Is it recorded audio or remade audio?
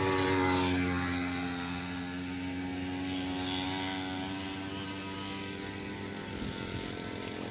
recorded